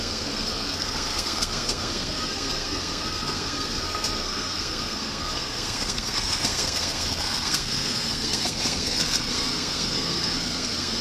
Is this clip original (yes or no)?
no